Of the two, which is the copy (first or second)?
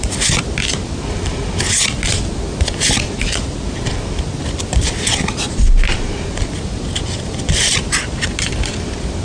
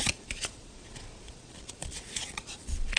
second